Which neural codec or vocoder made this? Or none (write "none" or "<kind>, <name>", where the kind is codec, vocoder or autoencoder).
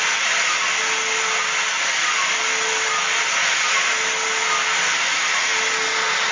none